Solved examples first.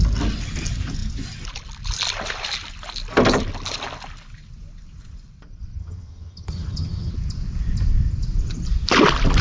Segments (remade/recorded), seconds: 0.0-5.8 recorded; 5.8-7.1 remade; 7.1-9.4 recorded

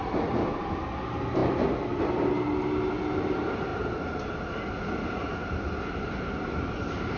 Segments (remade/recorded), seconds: 0.0-7.2 recorded